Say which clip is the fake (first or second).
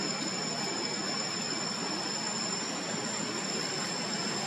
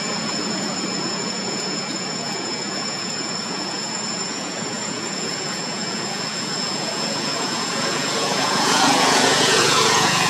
second